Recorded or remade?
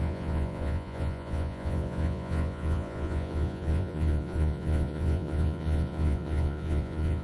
remade